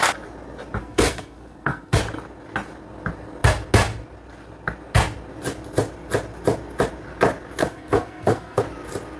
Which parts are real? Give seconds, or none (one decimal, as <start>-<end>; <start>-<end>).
0.0-0.8; 2.0-7.6; 8.6-9.2

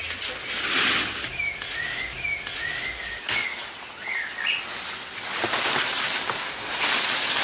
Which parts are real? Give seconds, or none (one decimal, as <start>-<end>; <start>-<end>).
0.0-7.4

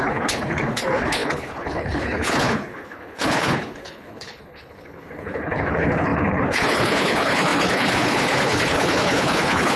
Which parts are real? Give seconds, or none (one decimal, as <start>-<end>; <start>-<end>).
none

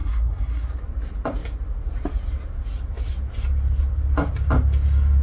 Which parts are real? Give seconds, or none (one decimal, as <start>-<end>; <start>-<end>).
0.7-5.2

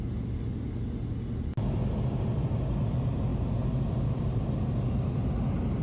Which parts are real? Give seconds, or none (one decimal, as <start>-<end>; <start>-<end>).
0.0-5.8

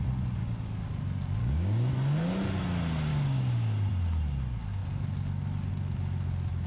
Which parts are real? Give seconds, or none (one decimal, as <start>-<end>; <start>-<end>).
0.0-0.4; 0.9-1.4; 1.9-3.1; 3.9-6.7

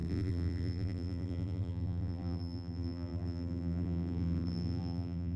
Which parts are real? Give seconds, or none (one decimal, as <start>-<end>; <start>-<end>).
none